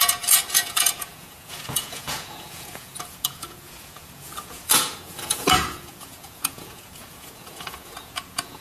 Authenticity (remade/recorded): remade